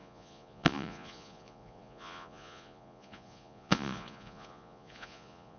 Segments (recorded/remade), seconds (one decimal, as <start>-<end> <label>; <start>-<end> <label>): 0.0-5.6 remade